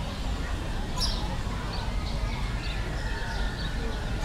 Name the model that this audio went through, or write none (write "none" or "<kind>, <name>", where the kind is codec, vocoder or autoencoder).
none